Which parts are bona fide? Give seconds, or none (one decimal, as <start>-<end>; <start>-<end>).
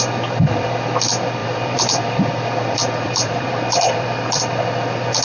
0.0-1.4; 4.4-5.2